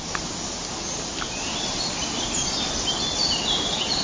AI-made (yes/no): no